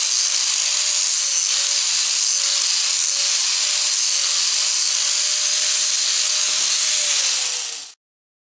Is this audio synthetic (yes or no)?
no